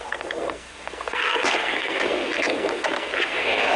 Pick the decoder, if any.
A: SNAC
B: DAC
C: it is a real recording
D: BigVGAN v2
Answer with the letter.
A